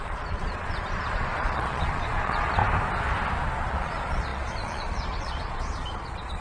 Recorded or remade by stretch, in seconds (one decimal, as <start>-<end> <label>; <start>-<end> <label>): 0.0-2.6 remade; 2.6-3.7 recorded; 3.7-6.4 remade